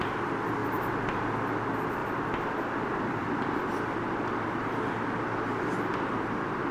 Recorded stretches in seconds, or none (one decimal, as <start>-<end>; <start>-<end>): 0.0-2.0; 4.9-6.7